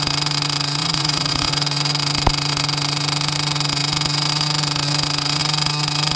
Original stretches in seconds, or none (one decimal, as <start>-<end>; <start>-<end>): 0.0-0.8; 1.5-6.2